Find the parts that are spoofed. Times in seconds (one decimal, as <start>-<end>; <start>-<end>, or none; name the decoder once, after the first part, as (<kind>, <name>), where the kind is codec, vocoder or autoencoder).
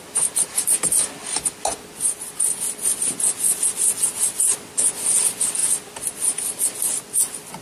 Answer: none